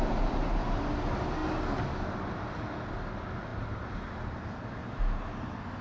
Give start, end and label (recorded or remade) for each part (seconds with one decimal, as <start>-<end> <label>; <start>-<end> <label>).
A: 0.0-5.8 recorded